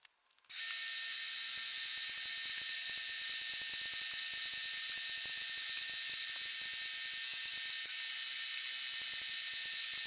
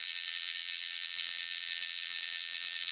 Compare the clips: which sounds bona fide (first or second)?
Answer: first